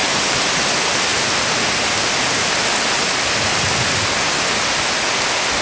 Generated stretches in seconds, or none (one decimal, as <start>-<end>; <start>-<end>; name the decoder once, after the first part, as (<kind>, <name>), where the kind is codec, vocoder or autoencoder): 0.0-0.7 (vocoder, BigVGAN v2)